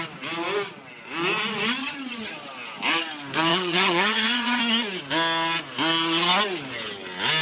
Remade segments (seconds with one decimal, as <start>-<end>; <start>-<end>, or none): 1.8-2.3; 3.5-4.6